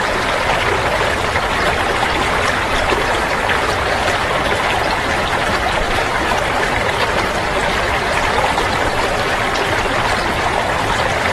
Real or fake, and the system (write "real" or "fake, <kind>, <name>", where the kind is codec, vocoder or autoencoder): real